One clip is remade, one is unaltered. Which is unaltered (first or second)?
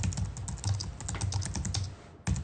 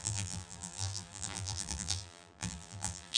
first